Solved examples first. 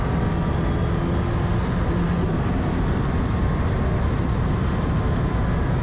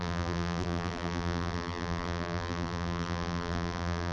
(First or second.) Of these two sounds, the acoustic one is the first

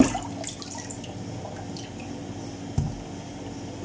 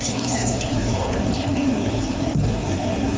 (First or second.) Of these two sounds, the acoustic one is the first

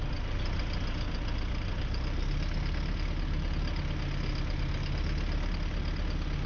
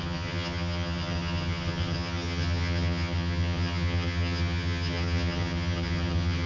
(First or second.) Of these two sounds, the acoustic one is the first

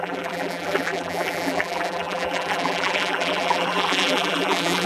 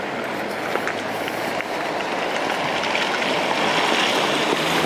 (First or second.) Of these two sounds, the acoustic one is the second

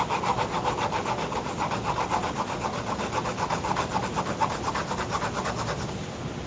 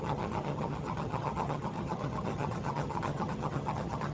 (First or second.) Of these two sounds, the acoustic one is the first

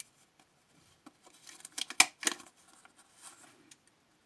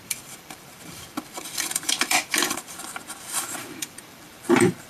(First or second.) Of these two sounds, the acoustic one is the first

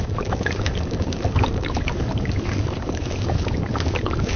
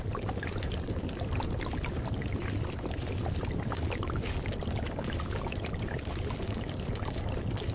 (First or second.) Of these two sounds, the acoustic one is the second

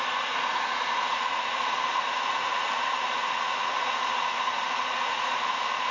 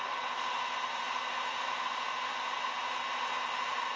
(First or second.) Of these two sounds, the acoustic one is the second